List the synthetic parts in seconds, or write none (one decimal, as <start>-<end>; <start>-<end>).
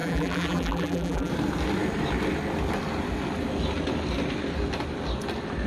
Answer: 0.0-1.3